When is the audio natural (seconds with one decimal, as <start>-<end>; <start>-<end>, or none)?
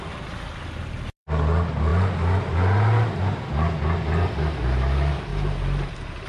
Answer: 0.0-5.3